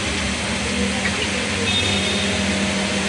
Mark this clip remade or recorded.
recorded